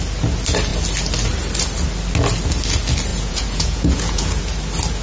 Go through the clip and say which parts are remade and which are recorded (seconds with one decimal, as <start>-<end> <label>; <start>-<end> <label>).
0.0-3.1 recorded; 3.1-4.4 remade; 4.4-5.0 recorded

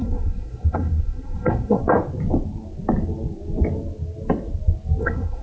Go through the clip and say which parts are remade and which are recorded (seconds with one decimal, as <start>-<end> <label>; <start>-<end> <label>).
0.0-1.8 remade; 1.8-5.0 recorded; 5.0-5.4 remade

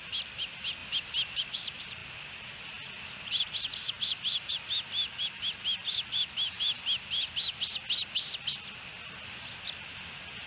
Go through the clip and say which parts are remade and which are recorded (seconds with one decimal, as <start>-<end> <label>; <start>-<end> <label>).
0.0-10.5 recorded

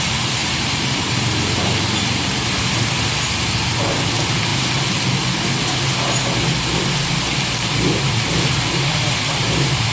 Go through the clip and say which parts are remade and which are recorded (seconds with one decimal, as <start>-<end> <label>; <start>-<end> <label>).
0.0-0.4 recorded; 0.4-2.6 remade; 2.6-9.9 recorded

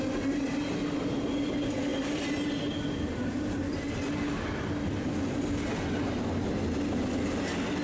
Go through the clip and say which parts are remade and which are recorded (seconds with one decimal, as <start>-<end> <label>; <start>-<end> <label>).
0.0-7.8 recorded

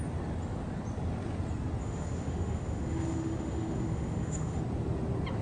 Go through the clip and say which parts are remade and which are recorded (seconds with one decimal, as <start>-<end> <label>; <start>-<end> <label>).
0.0-1.8 recorded; 1.8-4.6 remade; 4.6-5.4 recorded